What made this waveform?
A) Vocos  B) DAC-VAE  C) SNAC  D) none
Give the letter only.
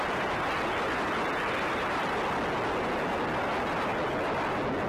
D